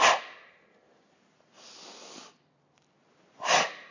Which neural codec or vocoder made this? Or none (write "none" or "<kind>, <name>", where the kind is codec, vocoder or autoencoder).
none